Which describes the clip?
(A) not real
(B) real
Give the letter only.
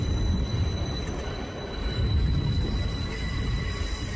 B